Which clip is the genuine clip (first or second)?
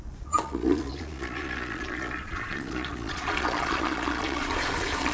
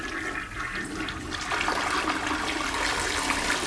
second